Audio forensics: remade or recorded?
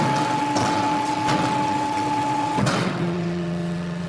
remade